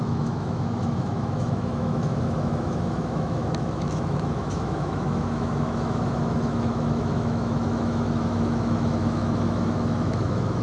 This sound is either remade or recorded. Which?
remade